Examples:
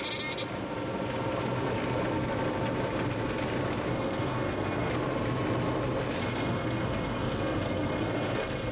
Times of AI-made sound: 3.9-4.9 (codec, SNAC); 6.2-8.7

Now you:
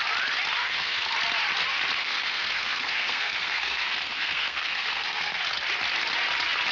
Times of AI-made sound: 0.6-1.1 (codec, SNAC); 2.0-5.4

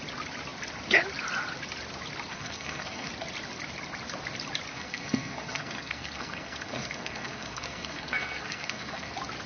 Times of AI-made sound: 2.3-3.1 (codec, SNAC); 4.7-9.1

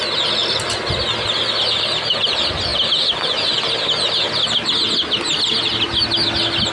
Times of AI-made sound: none

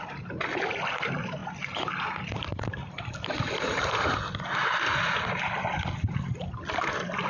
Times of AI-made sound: none

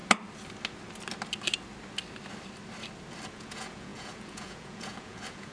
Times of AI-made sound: 3.3-5.5 (vocoder, Vocos)

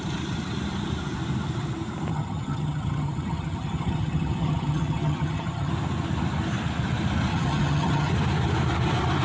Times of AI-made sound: 2.1-5.7 (vocoder, HiFi-GAN); 7.3-8.1